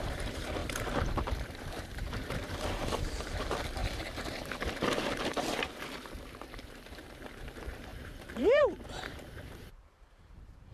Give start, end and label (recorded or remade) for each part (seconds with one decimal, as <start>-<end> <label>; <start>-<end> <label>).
0.0-10.7 remade